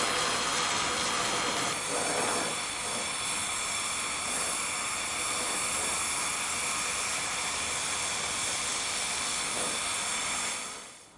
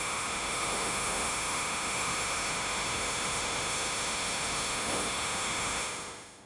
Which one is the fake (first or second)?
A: second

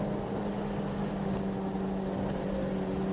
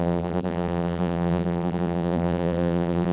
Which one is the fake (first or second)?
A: second